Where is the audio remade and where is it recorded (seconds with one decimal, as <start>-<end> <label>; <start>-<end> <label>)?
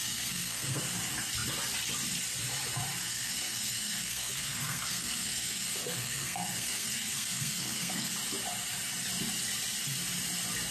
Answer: 0.0-0.8 remade; 0.8-3.0 recorded; 3.0-8.1 remade; 8.1-10.7 recorded